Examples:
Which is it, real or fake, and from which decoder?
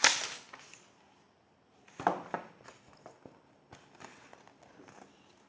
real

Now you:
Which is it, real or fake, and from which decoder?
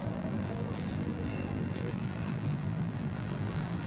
fake, vocoder, BigVGAN v2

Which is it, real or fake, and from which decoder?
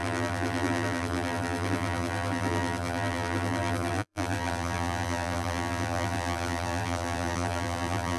fake, vocoder, BigVGAN v2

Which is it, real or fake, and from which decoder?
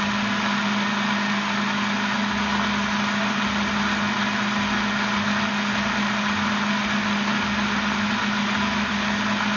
real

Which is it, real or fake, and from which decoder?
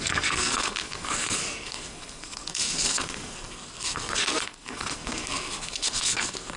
fake, codec, SNAC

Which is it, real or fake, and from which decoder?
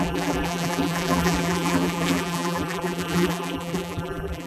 fake, vocoder, BigVGAN v2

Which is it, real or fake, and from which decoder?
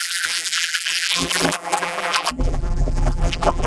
fake, vocoder, BigVGAN v2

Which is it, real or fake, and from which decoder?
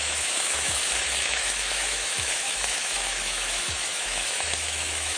fake, autoencoder, DAC-VAE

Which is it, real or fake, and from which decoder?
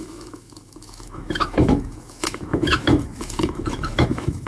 fake, autoencoder, DAC-VAE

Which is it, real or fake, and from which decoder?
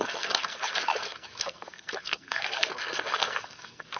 fake, codec, SNAC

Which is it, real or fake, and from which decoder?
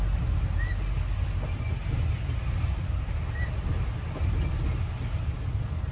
real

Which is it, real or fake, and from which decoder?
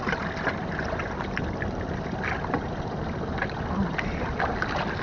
real